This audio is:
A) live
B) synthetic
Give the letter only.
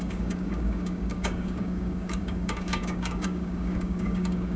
B